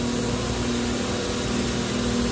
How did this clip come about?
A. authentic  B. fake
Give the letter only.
A